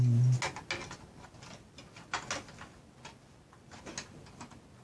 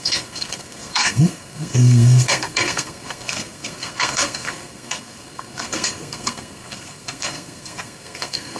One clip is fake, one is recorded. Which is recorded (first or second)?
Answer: first